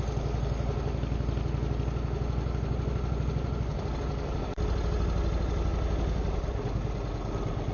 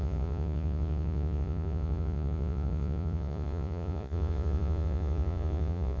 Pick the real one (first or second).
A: first